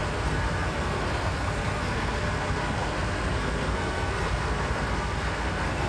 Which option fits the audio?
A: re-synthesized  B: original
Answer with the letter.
A